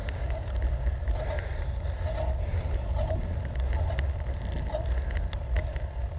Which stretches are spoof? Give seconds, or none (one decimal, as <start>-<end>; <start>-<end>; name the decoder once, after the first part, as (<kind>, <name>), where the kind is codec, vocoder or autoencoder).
0.0-0.6 (codec, DAC)